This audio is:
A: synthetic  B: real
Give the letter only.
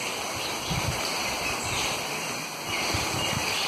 B